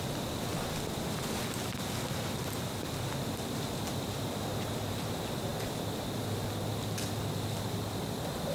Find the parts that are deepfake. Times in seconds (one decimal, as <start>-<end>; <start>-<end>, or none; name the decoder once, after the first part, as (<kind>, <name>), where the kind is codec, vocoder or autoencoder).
none

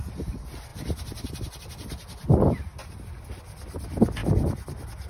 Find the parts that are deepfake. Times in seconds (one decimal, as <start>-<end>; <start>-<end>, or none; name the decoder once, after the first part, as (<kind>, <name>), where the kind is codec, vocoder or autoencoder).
none

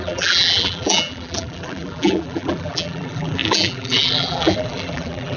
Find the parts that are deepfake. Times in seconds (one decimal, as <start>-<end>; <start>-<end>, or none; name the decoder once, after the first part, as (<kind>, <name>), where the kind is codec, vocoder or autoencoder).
0.0-5.4 (vocoder, BigVGAN v2)